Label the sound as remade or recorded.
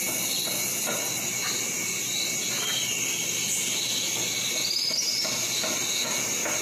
recorded